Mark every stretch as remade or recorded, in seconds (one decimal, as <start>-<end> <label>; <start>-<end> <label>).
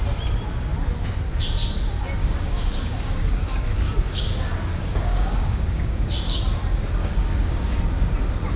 0.0-2.2 recorded; 2.2-6.4 remade; 6.4-7.0 recorded; 7.0-7.8 remade; 7.8-8.6 recorded